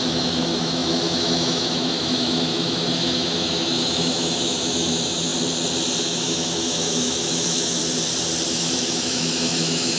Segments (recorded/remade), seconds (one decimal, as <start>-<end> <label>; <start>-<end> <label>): 0.0-5.3 remade; 5.3-6.0 recorded; 6.0-7.8 remade; 7.8-8.5 recorded; 8.5-10.0 remade